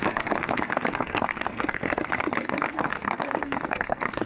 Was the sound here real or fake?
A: fake